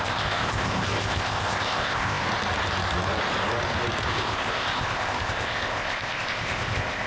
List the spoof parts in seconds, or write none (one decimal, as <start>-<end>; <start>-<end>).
0.0-2.2; 4.1-7.1